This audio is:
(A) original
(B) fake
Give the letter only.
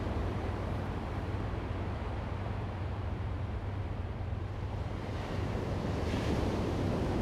B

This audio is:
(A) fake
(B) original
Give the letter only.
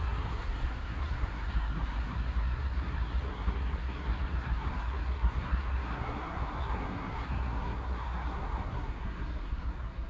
A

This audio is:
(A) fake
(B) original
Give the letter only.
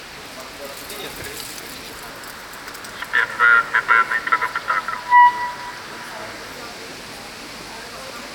B